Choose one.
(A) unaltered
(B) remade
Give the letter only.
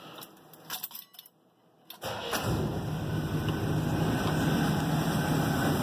A